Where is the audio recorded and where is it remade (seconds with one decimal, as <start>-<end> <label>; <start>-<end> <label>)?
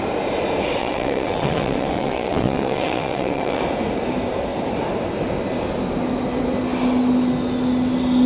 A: 0.0-0.8 recorded; 0.8-3.6 remade; 3.6-8.3 recorded